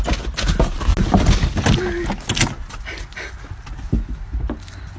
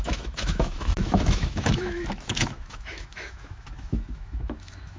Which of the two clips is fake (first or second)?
second